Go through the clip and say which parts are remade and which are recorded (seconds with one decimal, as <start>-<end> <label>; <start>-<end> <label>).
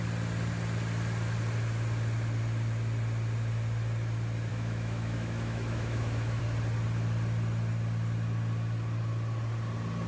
0.0-4.5 recorded; 4.5-6.4 remade; 6.4-10.1 recorded